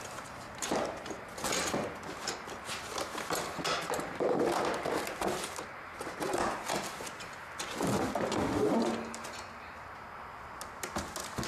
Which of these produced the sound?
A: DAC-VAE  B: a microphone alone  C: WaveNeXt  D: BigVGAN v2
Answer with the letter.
B